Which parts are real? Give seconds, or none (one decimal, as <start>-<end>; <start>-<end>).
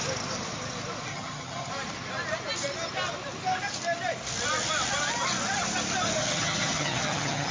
0.0-1.1; 1.7-6.2